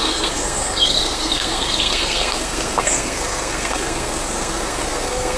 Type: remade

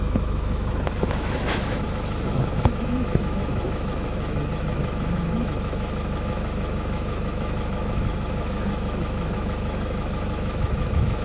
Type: remade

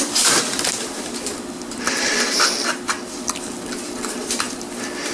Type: recorded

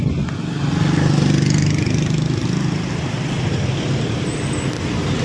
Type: recorded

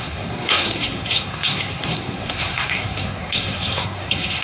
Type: remade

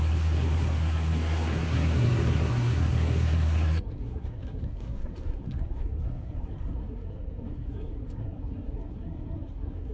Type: remade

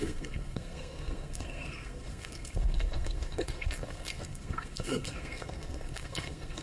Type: remade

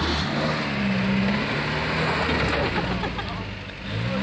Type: recorded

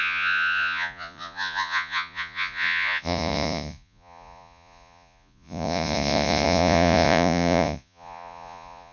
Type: remade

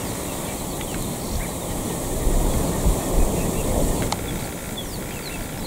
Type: recorded